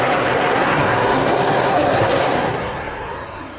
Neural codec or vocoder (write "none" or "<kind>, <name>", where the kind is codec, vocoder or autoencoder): codec, SNAC